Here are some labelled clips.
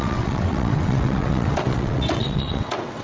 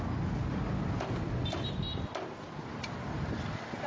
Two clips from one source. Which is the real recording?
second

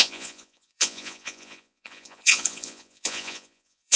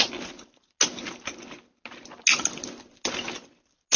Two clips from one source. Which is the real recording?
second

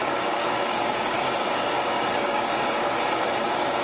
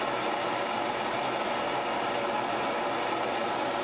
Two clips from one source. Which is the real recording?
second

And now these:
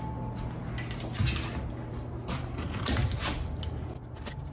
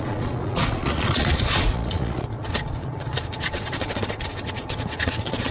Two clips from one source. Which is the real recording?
first